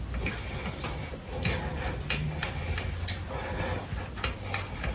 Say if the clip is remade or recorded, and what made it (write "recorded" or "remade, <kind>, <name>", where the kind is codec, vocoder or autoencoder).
recorded